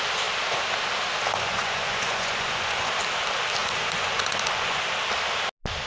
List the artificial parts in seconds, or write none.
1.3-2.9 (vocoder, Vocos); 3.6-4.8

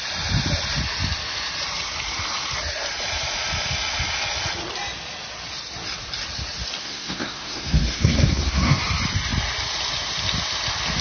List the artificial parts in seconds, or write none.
6.8-8.8 (codec, SNAC)

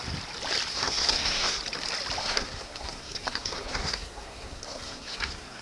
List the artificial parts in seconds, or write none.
0.7-1.6 (codec, SNAC); 2.2-5.6

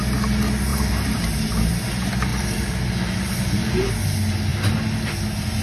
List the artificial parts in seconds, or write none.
0.7-1.7 (vocoder, BigVGAN v2); 2.3-3.9